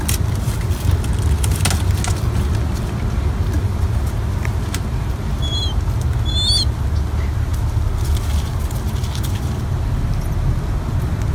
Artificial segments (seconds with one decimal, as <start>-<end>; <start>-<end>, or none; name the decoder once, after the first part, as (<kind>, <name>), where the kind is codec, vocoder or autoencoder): none